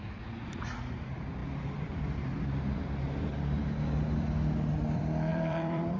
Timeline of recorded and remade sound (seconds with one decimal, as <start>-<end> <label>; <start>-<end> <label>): 0.0-5.3 recorded; 5.3-6.0 remade